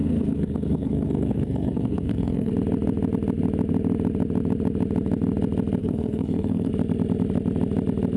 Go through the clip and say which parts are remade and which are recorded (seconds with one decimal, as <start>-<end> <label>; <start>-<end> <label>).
0.0-2.5 remade; 2.5-5.8 recorded; 5.8-6.7 remade; 6.7-8.2 recorded